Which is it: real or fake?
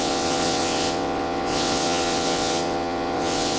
fake